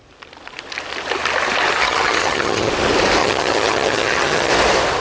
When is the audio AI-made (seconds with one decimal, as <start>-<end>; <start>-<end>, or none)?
1.8-2.7; 3.2-4.5